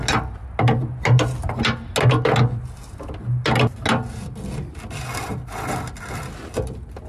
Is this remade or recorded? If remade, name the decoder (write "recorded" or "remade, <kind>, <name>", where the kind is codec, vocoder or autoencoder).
recorded